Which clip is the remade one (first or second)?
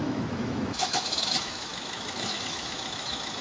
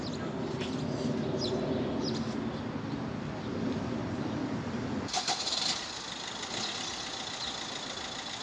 first